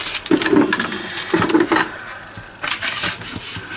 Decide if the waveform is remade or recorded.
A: recorded